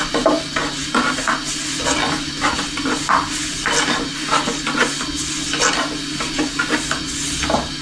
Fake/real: real